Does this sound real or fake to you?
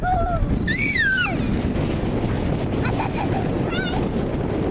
real